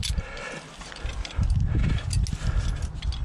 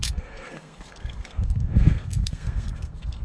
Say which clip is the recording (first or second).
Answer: first